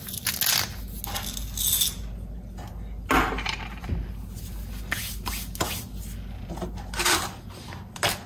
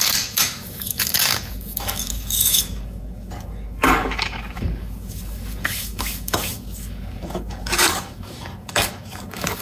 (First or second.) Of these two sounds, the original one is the first